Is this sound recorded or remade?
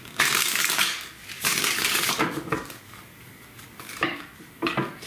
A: remade